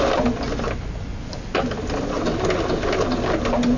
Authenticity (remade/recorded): recorded